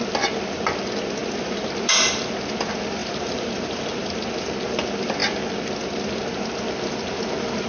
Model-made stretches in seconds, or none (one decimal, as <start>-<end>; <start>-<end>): 1.2-1.7; 3.0-4.5